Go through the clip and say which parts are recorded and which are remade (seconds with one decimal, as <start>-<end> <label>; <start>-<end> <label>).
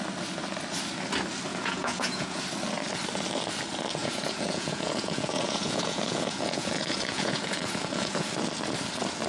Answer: 0.0-1.5 recorded; 1.5-2.4 remade; 2.4-4.0 recorded; 4.0-8.3 remade; 8.3-9.3 recorded